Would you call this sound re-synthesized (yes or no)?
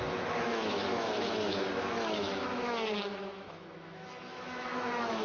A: yes